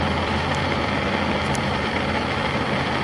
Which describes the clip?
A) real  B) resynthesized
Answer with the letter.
B